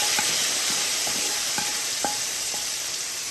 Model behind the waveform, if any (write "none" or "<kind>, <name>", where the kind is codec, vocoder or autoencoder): vocoder, BigVGAN v2